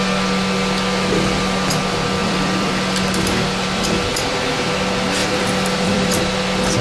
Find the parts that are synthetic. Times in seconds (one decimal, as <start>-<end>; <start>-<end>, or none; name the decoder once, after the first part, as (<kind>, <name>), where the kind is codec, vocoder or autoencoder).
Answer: 2.2-2.7 (vocoder, BigVGAN v2); 4.1-4.7; 5.2-6.2